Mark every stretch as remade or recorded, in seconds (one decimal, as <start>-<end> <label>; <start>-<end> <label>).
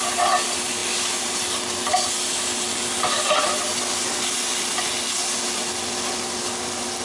0.0-7.0 recorded